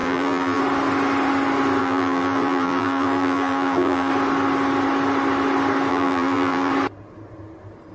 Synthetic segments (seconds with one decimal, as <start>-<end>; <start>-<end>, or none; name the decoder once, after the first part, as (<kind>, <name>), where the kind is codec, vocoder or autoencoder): 0.0-0.6 (vocoder, BigVGAN v2); 1.8-4.1; 5.9-6.7